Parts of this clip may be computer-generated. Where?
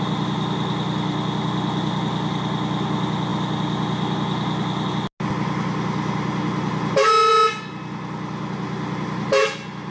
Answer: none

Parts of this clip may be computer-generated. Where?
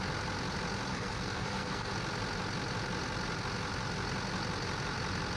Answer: 0.9-1.9 (codec, SNAC)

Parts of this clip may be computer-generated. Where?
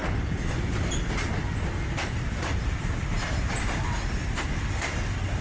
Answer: none